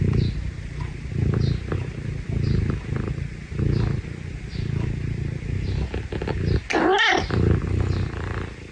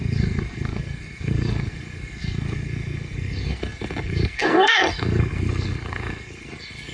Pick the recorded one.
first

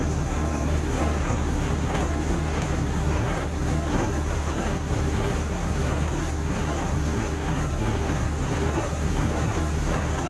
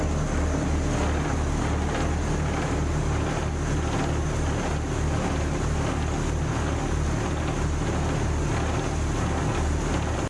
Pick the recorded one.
second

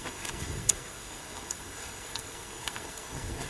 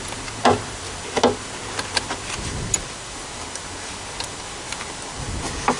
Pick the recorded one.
second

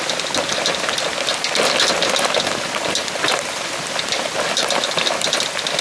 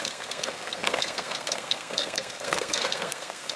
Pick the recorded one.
first